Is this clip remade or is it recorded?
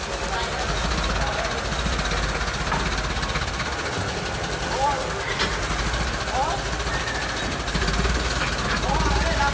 recorded